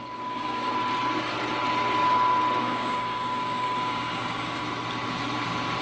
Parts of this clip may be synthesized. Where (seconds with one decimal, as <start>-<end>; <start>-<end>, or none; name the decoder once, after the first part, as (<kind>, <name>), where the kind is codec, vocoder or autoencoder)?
0.0-0.7 (codec, DAC); 2.6-4.6